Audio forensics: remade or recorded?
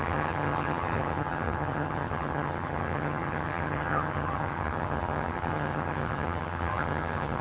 remade